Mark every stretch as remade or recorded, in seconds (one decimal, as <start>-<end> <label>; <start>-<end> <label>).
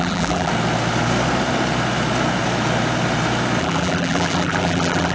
0.0-0.5 remade; 0.5-3.6 recorded; 3.6-5.1 remade